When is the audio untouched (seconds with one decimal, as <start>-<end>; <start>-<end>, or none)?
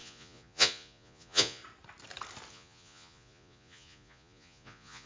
1.6-2.5